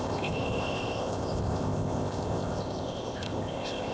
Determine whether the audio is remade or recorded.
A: remade